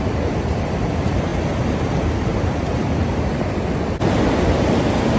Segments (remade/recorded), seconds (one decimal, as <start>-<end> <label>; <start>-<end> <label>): 0.0-5.2 recorded

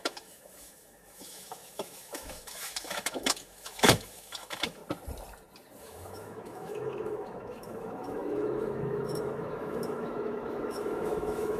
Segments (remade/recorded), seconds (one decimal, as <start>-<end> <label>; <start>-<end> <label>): 0.0-4.8 remade; 4.8-5.8 recorded; 5.8-11.6 remade

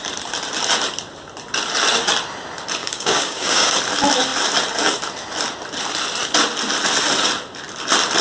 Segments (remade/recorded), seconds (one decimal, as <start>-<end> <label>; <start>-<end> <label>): 0.0-2.8 recorded; 2.8-3.8 remade; 3.8-8.2 recorded